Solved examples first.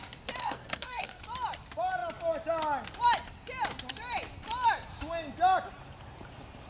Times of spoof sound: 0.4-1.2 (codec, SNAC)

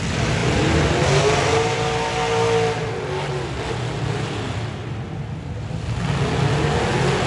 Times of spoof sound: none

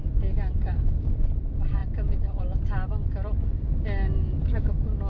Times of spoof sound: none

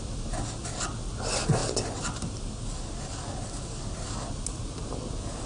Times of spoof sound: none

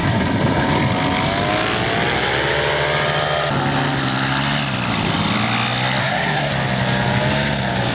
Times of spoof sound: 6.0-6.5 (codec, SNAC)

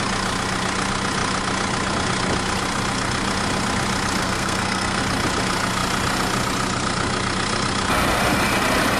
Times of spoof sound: 4.2-5.0 (codec, SNAC)